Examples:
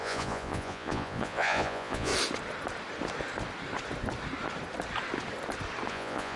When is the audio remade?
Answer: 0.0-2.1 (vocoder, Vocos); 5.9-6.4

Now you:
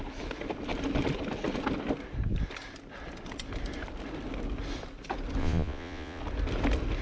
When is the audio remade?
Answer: 5.4-6.2 (vocoder, Vocos)